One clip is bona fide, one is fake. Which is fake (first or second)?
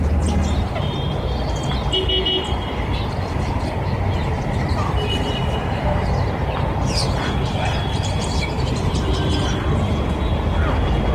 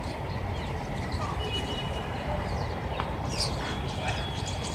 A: second